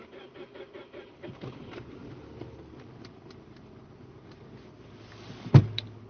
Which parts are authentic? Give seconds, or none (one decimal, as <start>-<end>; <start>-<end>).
0.0-6.1